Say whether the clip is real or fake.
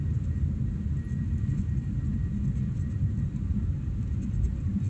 real